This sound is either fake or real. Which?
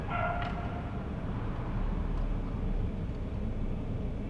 real